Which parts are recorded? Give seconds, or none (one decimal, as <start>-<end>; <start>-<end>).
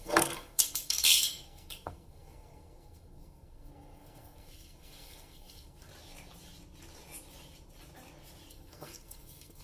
5.9-8.5